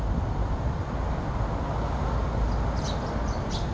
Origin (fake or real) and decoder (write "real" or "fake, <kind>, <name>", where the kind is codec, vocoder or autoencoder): real